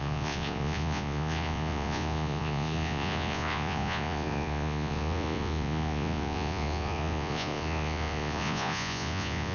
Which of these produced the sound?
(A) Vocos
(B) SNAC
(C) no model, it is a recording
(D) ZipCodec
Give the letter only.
A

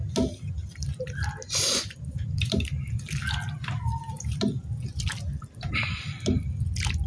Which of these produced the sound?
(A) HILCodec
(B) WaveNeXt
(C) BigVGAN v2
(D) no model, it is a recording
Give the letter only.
D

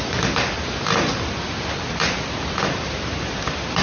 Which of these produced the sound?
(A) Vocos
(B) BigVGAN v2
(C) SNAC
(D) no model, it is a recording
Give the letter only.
B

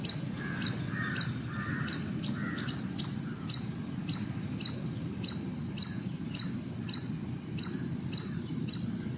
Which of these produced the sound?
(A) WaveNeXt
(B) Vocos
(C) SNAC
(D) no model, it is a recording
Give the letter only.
D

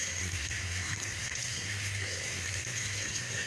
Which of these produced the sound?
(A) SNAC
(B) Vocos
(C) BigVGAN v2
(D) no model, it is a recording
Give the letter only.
A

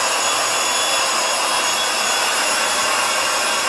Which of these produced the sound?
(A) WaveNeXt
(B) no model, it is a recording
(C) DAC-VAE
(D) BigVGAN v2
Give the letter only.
D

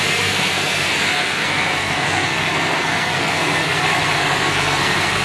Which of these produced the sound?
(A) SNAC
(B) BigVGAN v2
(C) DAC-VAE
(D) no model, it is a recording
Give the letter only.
A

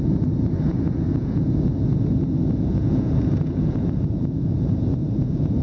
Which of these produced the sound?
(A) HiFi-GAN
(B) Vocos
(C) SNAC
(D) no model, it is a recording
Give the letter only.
B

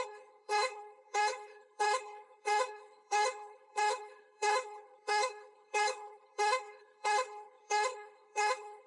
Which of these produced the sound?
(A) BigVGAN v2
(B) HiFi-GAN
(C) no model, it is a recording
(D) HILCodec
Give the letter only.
D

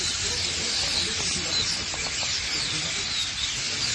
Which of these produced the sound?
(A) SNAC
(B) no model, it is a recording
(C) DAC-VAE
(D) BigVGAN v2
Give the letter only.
B